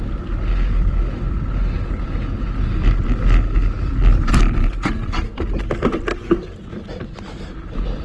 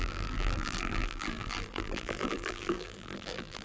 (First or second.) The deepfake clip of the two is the second